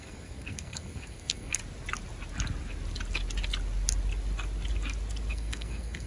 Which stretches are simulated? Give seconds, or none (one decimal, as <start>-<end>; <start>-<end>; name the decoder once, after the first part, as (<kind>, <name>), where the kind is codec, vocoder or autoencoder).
0.0-1.6 (codec, SNAC); 5.3-6.1